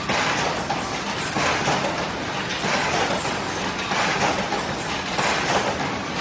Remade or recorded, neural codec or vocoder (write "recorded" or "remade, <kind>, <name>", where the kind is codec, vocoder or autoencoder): recorded